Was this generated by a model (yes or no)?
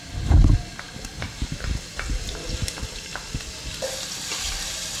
no